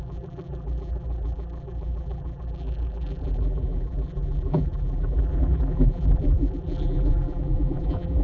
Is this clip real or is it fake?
fake